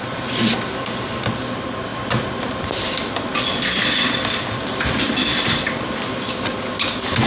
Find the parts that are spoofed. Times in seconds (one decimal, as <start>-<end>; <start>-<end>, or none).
1.9-2.6